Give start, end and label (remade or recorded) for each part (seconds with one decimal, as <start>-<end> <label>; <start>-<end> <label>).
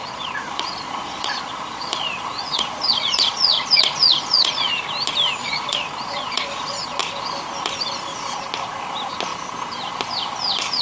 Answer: 0.0-4.7 remade; 4.7-5.4 recorded; 5.4-7.0 remade; 7.0-10.8 recorded